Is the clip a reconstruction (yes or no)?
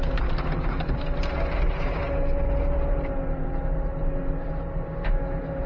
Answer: yes